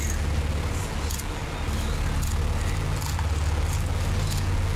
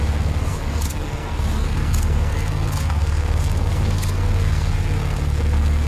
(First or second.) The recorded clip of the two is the first